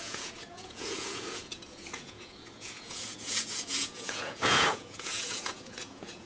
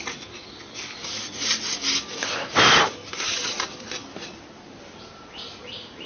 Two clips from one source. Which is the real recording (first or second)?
second